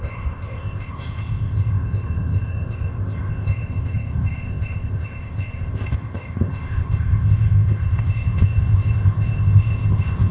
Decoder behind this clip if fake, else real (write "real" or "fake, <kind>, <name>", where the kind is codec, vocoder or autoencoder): fake, codec, ZipCodec